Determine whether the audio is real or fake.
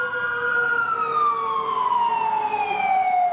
real